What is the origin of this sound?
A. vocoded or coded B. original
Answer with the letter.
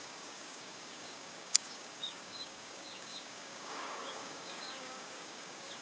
A